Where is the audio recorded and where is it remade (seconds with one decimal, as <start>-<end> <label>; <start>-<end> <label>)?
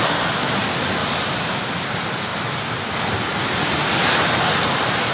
0.0-5.1 recorded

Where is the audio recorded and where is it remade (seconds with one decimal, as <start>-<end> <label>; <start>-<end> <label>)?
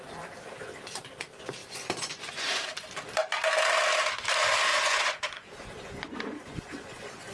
0.0-1.6 recorded; 1.6-2.6 remade; 2.6-4.7 recorded; 4.7-7.3 remade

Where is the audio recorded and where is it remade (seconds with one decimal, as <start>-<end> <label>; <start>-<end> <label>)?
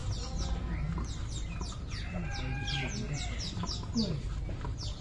0.0-5.0 recorded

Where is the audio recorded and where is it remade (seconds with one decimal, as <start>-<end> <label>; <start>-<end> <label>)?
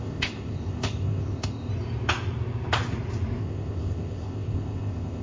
0.0-1.7 remade; 1.7-3.4 recorded; 3.4-5.2 remade